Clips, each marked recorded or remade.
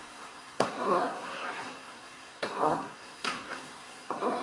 remade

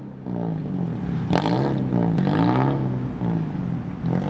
recorded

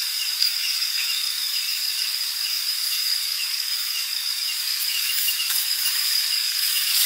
remade